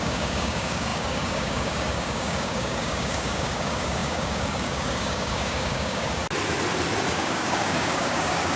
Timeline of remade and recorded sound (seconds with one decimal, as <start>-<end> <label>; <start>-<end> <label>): 0.0-6.2 remade; 6.2-7.1 recorded; 7.1-8.6 remade